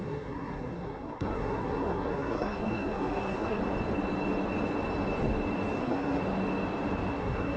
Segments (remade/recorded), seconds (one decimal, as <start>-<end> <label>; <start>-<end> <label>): 0.0-3.6 remade; 3.6-5.8 recorded; 5.8-6.2 remade; 6.2-7.1 recorded; 7.1-7.6 remade